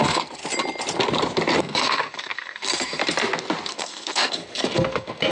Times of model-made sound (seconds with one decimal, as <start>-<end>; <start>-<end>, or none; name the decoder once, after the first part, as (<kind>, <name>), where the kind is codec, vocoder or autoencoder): 0.0-0.4 (codec, SNAC); 1.6-3.0; 3.7-5.3